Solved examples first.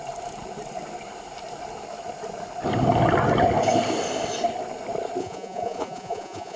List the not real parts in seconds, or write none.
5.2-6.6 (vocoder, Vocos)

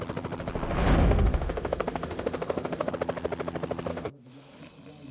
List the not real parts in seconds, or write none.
0.8-2.9 (autoencoder, DAC-VAE); 3.9-4.6

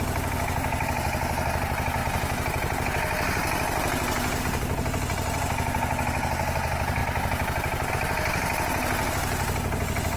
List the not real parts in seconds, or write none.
none

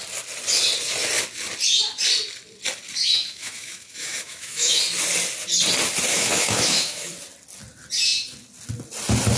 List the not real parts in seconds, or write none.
3.0-4.8 (autoencoder, DAC-VAE); 6.1-7.1

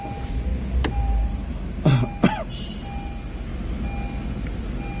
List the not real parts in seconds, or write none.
0.5-2.3 (vocoder, BigVGAN v2)

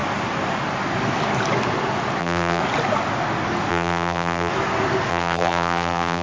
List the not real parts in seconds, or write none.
2.2-2.6 (vocoder, BigVGAN v2); 3.7-4.5; 5.1-6.2

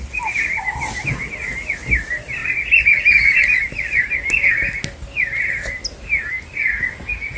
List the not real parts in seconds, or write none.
none

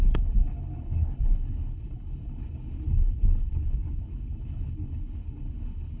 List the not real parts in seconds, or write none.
0.0-6.0 (codec, HILCodec)